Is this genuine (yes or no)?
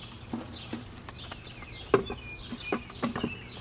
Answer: yes